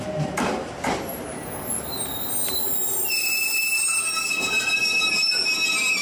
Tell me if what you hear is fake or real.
fake